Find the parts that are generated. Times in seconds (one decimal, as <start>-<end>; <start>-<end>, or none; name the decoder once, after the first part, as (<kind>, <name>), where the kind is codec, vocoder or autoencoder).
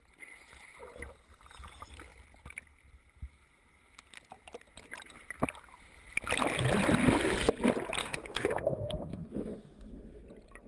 8.0-10.2 (autoencoder, DAC-VAE)